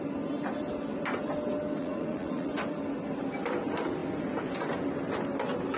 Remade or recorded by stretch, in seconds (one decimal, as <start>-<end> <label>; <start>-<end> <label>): 0.0-1.8 recorded; 1.8-2.5 remade; 2.5-5.8 recorded